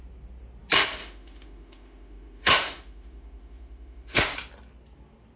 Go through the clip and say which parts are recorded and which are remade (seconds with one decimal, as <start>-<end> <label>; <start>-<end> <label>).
0.0-1.0 recorded; 1.0-4.2 remade; 4.2-5.4 recorded